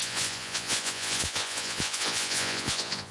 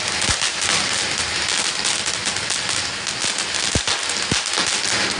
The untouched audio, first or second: second